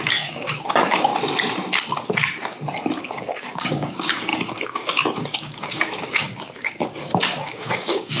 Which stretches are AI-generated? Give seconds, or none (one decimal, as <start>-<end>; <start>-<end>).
0.0-1.1; 3.0-8.2